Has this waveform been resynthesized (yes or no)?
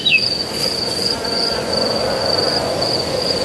yes